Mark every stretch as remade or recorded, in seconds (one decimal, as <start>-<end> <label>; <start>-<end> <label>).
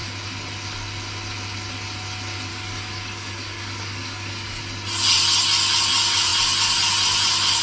0.0-2.5 recorded; 2.5-4.6 remade; 4.6-7.6 recorded